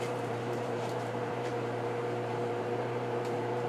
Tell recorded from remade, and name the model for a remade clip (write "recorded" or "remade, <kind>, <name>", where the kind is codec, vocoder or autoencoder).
remade, vocoder, BigVGAN v2